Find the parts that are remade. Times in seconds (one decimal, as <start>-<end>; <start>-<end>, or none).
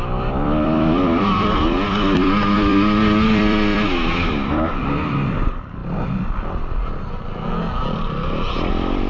0.0-5.8; 8.7-9.1